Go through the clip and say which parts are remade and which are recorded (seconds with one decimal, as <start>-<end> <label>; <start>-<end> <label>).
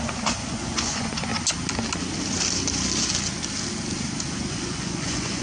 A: 0.0-1.3 remade; 1.3-4.5 recorded; 4.5-5.4 remade